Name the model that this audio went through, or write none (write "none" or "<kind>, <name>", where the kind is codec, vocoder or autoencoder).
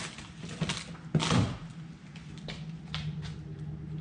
none